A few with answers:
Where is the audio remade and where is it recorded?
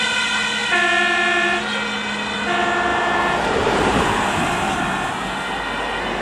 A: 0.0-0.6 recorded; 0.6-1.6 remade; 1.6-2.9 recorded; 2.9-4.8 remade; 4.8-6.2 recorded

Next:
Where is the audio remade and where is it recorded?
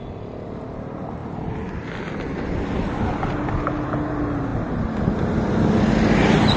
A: 0.0-1.2 recorded; 1.2-2.5 remade; 2.5-6.6 recorded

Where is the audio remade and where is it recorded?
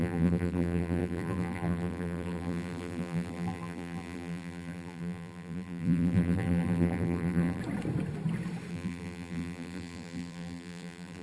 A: 0.0-7.6 remade; 7.6-8.7 recorded; 8.7-11.2 remade